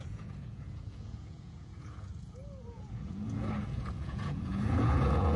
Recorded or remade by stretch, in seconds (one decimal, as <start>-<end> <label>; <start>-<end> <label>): 0.0-5.4 remade